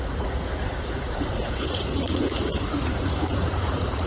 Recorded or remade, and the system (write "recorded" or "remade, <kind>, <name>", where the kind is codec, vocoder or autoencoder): remade, vocoder, Vocos